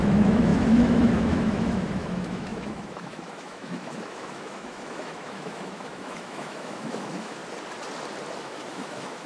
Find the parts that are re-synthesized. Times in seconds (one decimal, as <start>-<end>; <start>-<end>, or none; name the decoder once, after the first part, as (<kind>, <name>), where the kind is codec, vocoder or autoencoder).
0.0-7.4 (autoencoder, DAC-VAE); 8.4-9.3